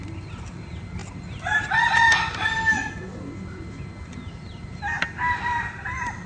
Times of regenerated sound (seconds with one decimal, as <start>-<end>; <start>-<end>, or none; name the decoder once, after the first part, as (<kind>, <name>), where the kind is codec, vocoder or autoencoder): none